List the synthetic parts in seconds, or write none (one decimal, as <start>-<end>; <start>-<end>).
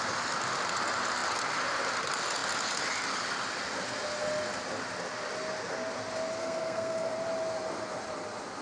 6.4-7.1